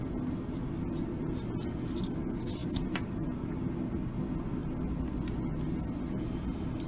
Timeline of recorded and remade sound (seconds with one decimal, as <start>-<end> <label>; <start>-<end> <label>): 0.0-6.9 recorded